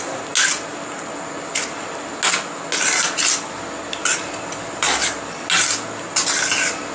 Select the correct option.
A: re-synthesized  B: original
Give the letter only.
B